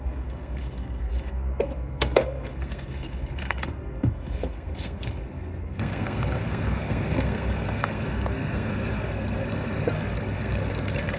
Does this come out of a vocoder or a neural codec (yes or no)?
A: yes